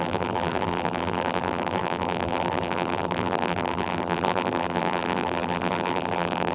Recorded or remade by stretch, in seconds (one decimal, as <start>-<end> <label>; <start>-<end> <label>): 0.0-6.5 remade